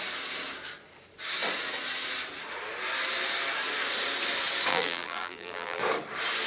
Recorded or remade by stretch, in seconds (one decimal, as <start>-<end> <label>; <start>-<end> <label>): 0.0-4.7 recorded; 4.7-5.8 remade; 5.8-6.5 recorded